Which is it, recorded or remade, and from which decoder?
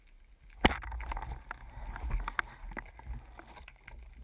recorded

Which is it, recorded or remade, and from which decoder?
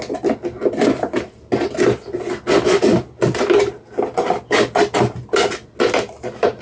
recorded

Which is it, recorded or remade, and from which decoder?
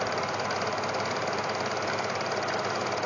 recorded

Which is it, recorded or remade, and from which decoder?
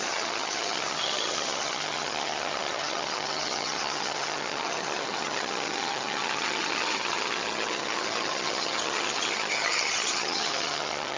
remade, vocoder, HiFi-GAN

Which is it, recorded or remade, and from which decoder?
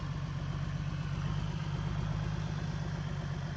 recorded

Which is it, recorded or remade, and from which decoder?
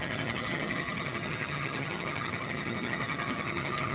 remade, vocoder, HiFi-GAN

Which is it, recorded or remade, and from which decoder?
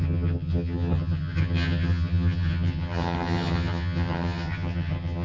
remade, vocoder, HiFi-GAN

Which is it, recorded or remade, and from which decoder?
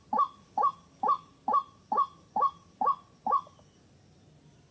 recorded